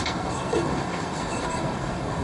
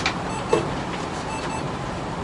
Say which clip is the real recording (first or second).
second